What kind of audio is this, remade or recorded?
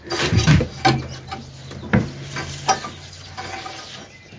recorded